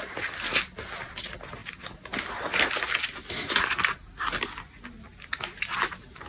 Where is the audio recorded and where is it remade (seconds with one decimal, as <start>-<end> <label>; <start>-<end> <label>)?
0.0-6.3 recorded